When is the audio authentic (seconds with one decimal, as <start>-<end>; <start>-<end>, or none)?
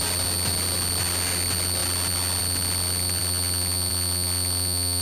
0.0-5.0